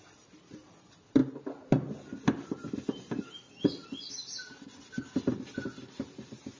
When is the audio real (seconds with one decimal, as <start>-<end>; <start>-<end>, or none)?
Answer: 0.0-6.6